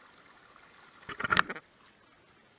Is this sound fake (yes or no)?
no